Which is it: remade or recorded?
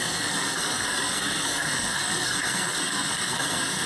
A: remade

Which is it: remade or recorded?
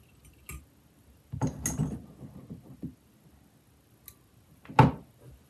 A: recorded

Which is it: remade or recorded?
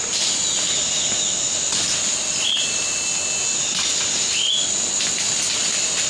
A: recorded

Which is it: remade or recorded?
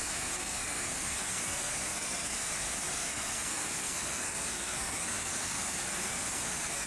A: remade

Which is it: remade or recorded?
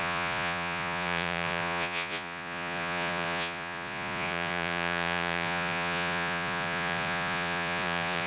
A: remade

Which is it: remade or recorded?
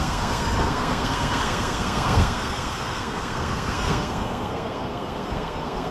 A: remade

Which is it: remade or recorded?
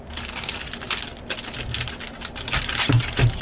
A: recorded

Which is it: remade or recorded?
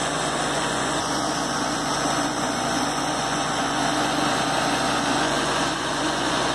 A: remade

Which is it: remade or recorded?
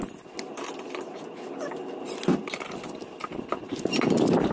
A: recorded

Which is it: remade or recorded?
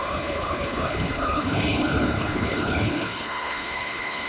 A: remade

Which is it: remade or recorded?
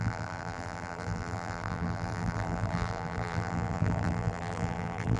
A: remade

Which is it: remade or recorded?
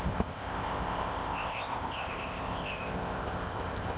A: remade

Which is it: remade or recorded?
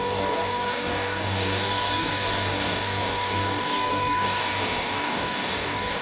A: remade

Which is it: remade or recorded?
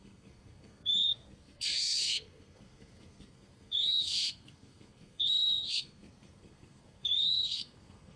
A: remade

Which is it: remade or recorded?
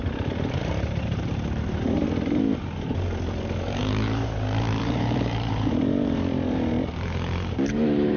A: remade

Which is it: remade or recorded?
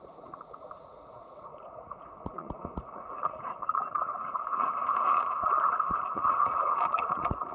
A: remade